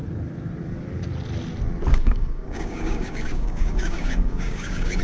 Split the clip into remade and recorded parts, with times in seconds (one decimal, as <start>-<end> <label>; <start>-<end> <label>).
0.0-1.9 recorded; 1.9-5.0 remade